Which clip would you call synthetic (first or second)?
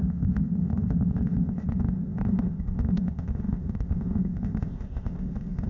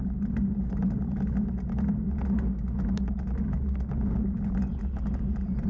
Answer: first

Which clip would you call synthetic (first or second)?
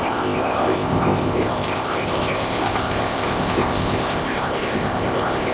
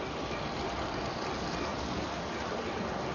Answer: first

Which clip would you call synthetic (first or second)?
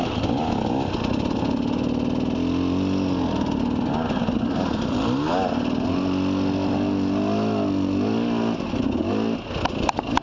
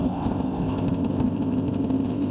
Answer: second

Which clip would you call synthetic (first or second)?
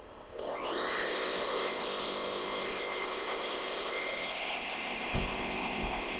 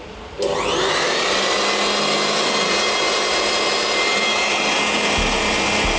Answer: first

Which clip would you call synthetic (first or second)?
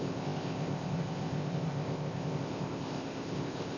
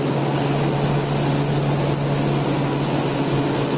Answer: first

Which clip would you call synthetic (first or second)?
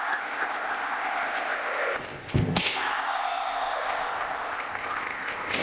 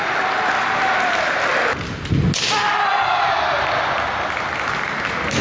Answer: first